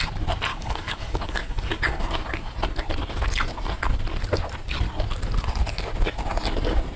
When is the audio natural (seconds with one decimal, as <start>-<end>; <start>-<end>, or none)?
0.0-0.5; 2.1-7.0